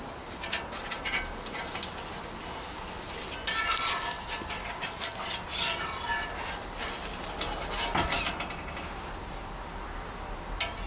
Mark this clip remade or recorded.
recorded